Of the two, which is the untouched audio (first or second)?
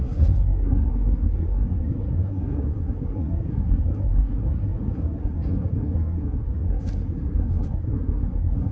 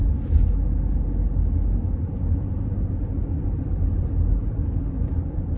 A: second